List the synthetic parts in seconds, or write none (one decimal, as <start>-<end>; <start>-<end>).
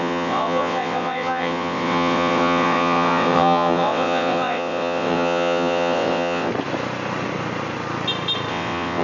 0.0-6.5; 8.5-9.0